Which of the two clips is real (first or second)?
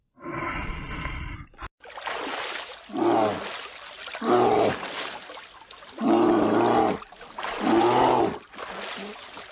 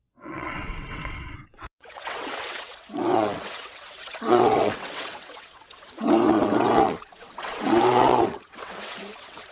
first